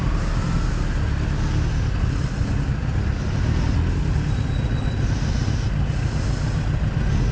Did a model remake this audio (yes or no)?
no